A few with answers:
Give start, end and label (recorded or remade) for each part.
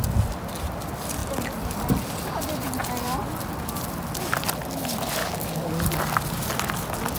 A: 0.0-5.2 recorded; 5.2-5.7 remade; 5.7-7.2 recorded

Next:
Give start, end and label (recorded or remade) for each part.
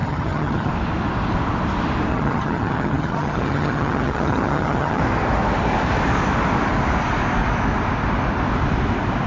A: 0.0-0.7 remade; 0.7-2.1 recorded; 2.1-5.0 remade; 5.0-9.3 recorded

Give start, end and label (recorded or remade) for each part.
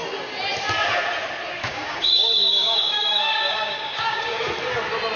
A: 0.0-1.6 recorded; 1.6-4.4 remade; 4.4-5.2 recorded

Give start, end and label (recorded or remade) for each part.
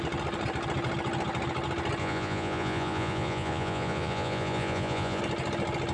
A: 0.0-2.0 recorded; 2.0-5.2 remade; 5.2-5.9 recorded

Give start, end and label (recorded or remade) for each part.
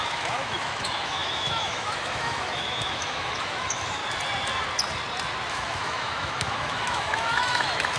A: 0.0-4.0 remade; 4.0-5.5 recorded; 5.5-8.0 remade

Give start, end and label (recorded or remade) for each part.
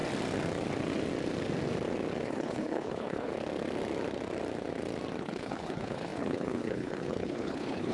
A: 0.0-2.2 recorded; 2.2-3.3 remade; 3.3-5.2 recorded; 5.2-7.9 remade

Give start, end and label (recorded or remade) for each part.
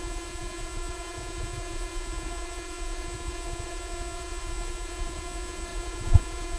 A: 0.0-6.6 remade